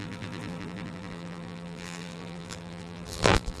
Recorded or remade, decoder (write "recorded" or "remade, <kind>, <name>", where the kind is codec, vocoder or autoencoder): remade, vocoder, BigVGAN v2